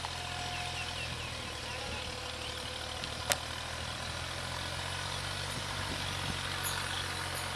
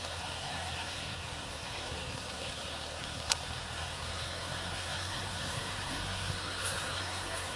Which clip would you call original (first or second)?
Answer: first